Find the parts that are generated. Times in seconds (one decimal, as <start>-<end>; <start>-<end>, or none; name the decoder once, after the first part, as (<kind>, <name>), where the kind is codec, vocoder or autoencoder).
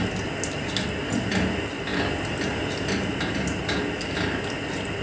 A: none